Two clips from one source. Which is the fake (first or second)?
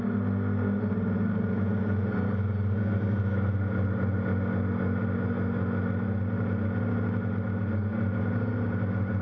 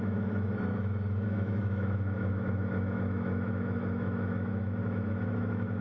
second